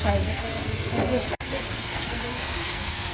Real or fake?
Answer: fake